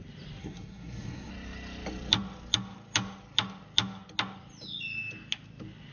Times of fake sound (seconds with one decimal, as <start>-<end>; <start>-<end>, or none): 0.4-1.3